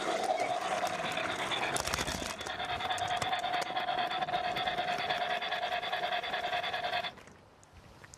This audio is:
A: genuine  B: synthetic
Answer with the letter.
A